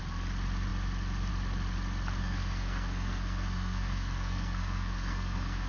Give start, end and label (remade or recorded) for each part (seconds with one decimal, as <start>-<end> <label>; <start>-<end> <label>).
0.0-2.2 recorded; 2.2-5.7 remade